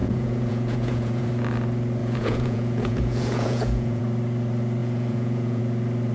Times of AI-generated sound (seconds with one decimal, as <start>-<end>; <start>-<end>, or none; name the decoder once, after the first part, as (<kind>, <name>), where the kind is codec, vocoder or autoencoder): 0.0-1.3 (vocoder, Vocos); 2.0-4.0; 4.8-5.6